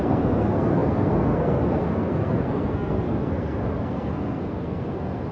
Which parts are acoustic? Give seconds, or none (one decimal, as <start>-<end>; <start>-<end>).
none